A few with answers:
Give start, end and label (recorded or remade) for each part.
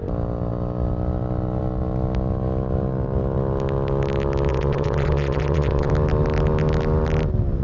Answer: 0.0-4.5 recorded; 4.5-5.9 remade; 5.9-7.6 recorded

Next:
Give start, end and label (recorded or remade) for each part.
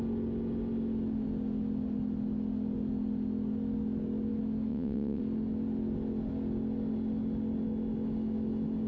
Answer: 0.0-4.7 recorded; 4.7-5.2 remade; 5.2-8.9 recorded